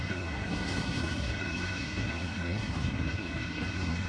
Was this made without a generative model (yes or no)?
no